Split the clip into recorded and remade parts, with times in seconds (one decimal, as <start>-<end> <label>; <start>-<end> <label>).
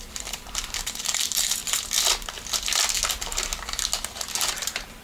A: 0.0-1.6 remade; 1.6-4.5 recorded; 4.5-5.0 remade